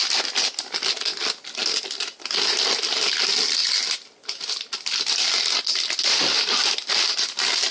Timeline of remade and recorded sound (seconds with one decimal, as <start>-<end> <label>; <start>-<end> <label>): 0.0-7.7 recorded

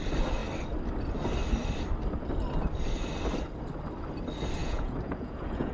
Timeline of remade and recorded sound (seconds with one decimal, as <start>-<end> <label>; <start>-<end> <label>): 0.0-4.6 recorded; 4.6-5.7 remade